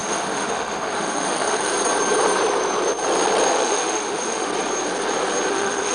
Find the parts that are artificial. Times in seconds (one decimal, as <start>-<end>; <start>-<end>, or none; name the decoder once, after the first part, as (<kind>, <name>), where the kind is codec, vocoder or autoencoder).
0.0-1.7 (autoencoder, DAC-VAE); 3.5-4.5; 5.5-5.9